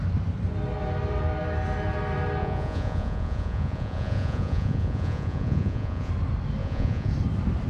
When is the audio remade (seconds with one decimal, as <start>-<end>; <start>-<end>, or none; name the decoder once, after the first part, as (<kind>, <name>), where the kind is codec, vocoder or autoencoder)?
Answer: 2.4-6.1 (vocoder, Vocos); 6.6-7.1